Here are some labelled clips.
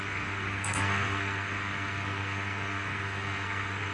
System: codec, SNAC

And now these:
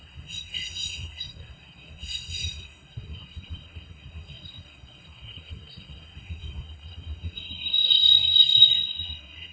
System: codec, SNAC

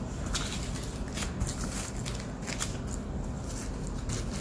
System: none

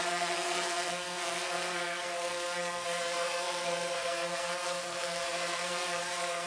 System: codec, SNAC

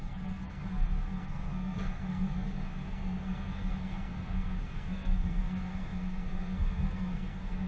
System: codec, SNAC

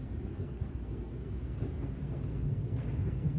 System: codec, SNAC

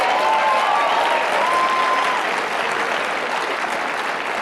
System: none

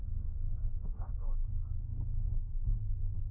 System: codec, SNAC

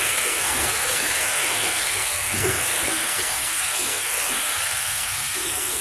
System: codec, SNAC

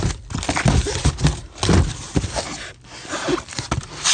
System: none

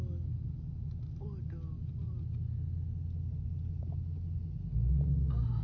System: none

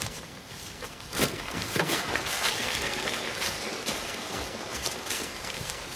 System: codec, SNAC